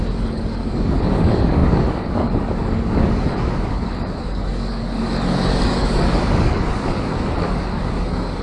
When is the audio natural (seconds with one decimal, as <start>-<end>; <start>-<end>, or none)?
none